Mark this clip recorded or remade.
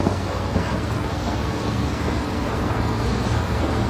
remade